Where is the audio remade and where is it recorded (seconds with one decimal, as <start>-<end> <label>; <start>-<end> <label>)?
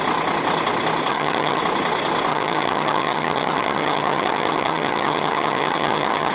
0.0-1.1 recorded; 1.1-1.6 remade; 1.6-2.3 recorded; 2.3-6.3 remade